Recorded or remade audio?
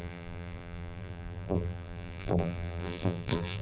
remade